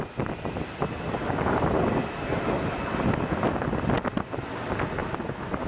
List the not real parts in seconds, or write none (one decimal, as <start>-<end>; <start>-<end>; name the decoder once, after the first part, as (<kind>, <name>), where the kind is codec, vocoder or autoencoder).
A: none